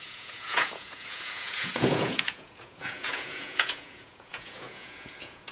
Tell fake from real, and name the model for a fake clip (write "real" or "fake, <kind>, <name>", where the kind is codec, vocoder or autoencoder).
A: fake, vocoder, Vocos